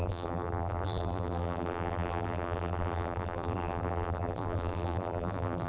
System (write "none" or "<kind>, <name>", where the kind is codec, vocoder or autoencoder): vocoder, BigVGAN v2